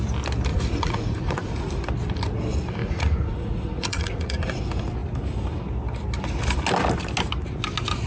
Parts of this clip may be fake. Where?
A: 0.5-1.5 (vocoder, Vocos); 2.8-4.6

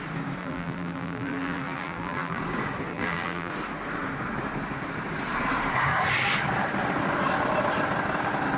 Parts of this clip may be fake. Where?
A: 0.4-2.4 (vocoder, BigVGAN v2); 2.9-3.5

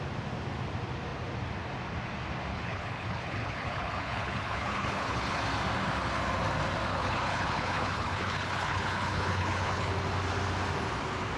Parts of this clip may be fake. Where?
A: 2.5-5.4 (codec, HILCodec); 6.9-9.9